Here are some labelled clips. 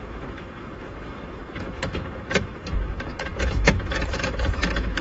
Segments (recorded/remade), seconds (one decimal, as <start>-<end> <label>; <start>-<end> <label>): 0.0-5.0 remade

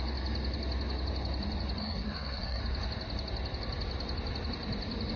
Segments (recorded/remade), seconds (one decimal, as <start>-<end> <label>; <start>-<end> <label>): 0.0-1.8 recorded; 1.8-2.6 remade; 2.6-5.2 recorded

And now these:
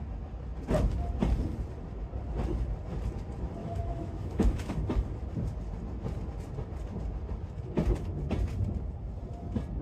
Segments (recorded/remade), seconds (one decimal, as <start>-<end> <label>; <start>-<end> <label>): 0.0-3.6 recorded; 3.6-4.8 remade; 4.8-9.8 recorded

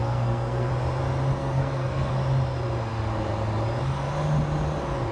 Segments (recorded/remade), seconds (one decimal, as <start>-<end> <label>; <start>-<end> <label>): 0.0-0.7 remade; 0.7-1.4 recorded; 1.4-2.1 remade; 2.1-5.1 recorded